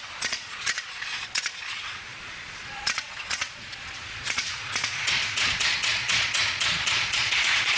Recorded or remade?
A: remade